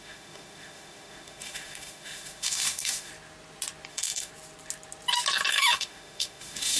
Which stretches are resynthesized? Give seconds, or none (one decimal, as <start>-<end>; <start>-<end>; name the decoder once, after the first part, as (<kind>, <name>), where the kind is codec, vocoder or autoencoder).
0.0-3.1 (autoencoder, DAC-VAE); 3.9-4.3; 5.5-6.8

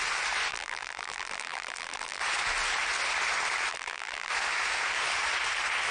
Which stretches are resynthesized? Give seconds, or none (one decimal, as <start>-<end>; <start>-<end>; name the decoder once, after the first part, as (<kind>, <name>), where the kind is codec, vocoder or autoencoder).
0.5-2.2 (vocoder, BigVGAN v2); 3.7-4.3

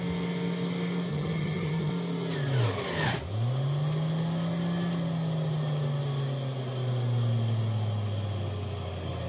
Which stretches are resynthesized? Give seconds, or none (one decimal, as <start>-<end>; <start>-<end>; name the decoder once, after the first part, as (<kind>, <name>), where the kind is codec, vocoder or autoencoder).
1.1-1.9 (vocoder, HiFi-GAN)

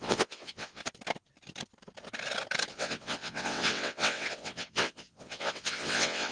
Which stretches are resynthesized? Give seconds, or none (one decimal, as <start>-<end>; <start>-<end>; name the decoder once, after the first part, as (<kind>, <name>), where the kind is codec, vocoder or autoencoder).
0.0-0.8 (vocoder, WaveNeXt); 2.7-6.3